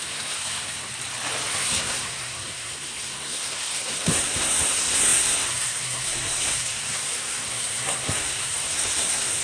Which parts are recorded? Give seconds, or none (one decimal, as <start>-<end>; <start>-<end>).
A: 0.9-1.5